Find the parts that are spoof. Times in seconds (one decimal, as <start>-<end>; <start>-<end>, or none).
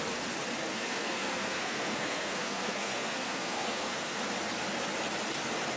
0.7-4.2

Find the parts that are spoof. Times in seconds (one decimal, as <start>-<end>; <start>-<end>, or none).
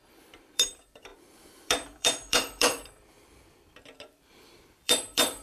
0.0-5.4